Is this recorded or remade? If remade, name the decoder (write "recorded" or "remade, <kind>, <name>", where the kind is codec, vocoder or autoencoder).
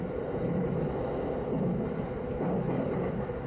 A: recorded